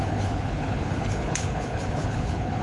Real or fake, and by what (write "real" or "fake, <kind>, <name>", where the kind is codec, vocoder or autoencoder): fake, codec, HILCodec